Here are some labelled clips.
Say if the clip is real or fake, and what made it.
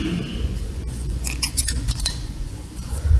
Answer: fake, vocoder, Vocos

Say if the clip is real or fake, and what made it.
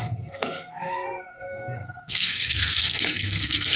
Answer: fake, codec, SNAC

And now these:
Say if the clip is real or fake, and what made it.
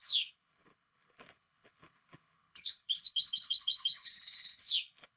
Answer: fake, codec, HILCodec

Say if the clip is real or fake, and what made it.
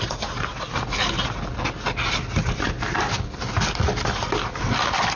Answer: real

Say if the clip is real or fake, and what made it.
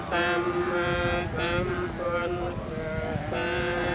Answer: real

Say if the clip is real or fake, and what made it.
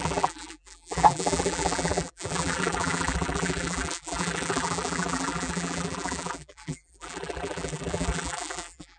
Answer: fake, vocoder, BigVGAN v2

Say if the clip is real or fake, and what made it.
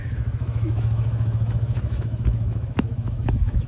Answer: fake, autoencoder, DAC-VAE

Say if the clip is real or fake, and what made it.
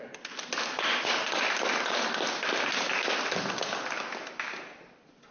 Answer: real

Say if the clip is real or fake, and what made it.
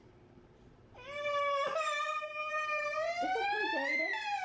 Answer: fake, vocoder, BigVGAN v2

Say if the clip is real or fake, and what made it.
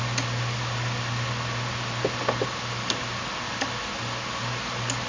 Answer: real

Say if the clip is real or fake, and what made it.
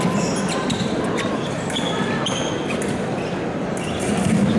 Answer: real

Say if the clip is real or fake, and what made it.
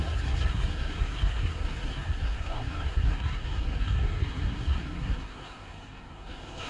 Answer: fake, codec, SNAC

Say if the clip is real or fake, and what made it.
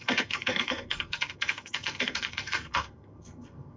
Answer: fake, codec, SNAC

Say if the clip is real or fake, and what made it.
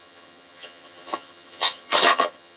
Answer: fake, vocoder, HiFi-GAN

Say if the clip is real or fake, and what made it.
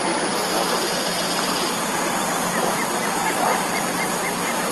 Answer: real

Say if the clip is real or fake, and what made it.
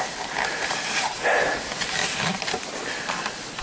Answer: real